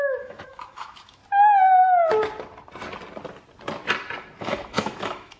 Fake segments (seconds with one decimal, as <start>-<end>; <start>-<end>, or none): 0.0-1.2; 4.4-5.4